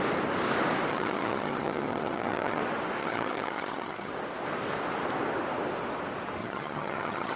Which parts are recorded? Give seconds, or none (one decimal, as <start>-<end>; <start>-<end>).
0.0-0.9; 2.6-3.0; 4.1-6.4